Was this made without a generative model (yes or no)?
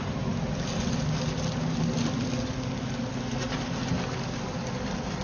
yes